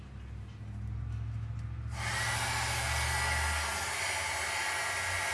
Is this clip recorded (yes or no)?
yes